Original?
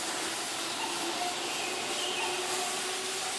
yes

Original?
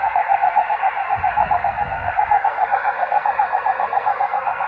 no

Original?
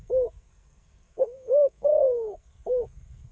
no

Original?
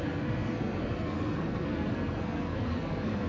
no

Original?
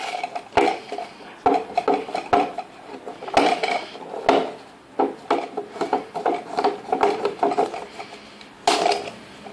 yes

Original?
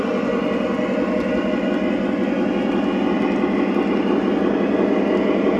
yes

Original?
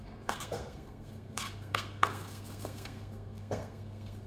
no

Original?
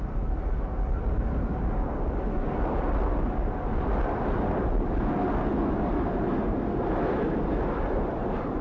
yes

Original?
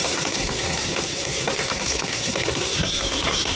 no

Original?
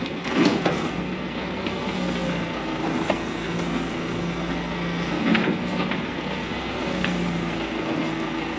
no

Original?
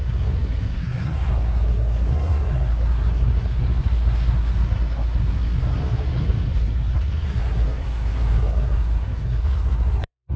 no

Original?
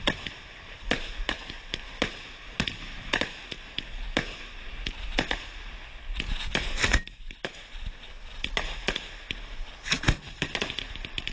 yes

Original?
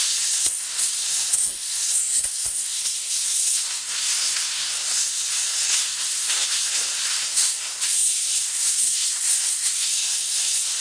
no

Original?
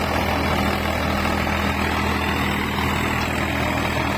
yes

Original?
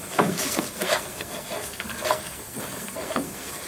no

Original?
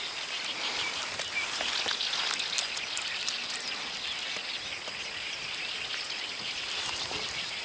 yes